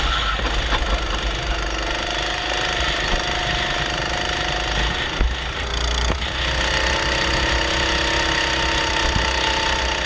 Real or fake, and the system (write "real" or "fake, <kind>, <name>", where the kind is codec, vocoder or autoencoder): real